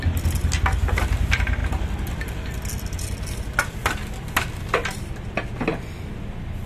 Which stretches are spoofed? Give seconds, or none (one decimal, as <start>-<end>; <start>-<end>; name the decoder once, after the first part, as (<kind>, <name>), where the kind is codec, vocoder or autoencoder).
none